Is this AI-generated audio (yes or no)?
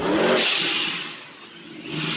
no